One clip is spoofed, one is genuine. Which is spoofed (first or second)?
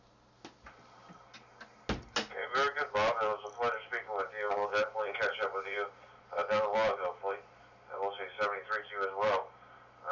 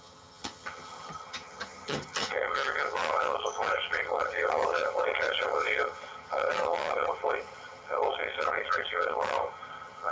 second